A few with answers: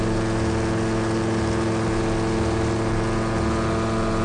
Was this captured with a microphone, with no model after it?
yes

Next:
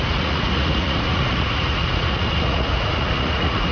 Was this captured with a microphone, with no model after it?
no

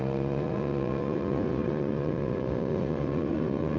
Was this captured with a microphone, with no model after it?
no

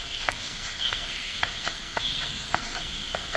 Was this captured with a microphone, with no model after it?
no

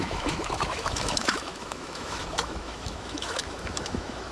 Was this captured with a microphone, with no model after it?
no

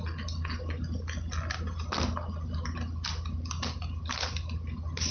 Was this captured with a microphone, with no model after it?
yes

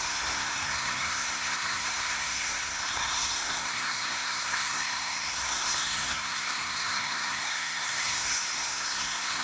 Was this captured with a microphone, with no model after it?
no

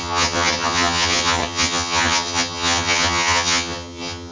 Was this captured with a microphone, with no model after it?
no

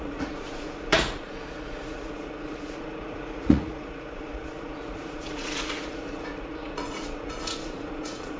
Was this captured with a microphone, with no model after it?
no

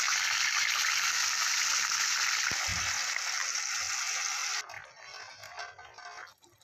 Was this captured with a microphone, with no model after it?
yes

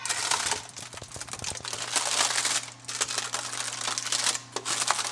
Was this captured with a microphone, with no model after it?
yes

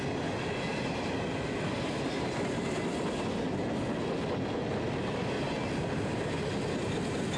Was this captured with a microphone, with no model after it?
yes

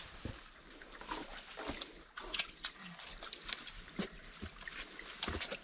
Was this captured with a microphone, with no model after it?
yes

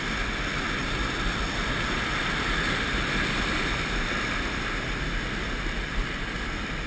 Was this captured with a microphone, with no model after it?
yes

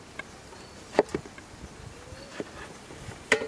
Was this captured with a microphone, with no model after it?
no